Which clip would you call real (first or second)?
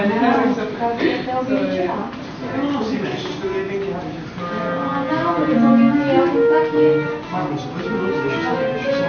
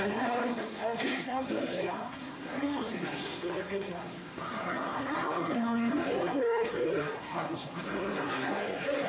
first